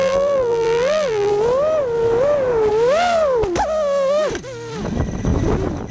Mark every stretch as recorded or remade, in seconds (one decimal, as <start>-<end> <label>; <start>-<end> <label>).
0.0-1.3 remade; 1.3-5.9 recorded